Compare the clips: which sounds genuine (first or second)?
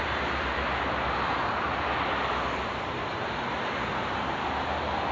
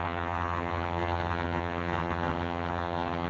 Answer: first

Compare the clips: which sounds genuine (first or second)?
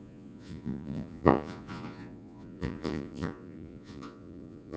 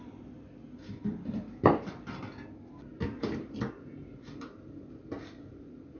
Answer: second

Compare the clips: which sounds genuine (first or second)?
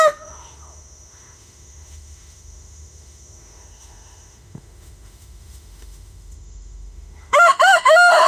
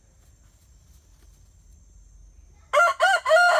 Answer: second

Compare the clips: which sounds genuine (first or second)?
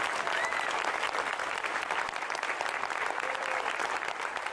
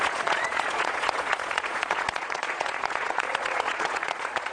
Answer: first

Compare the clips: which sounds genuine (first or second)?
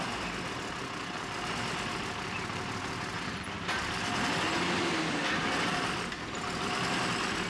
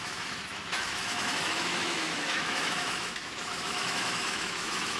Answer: first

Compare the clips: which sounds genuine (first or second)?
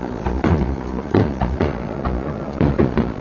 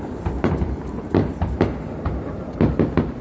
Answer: second